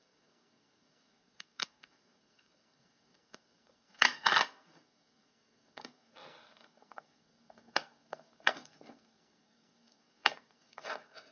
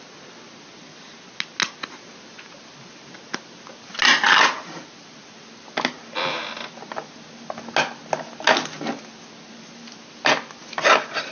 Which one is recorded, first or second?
second